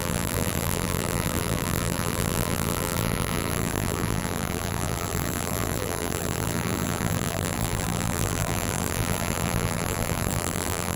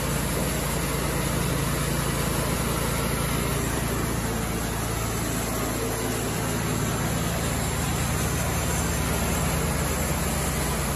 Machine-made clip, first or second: first